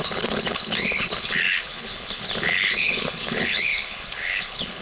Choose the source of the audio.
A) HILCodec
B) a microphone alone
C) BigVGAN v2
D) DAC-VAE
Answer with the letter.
A